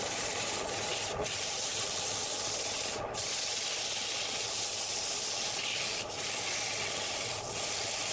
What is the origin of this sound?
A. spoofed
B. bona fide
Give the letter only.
B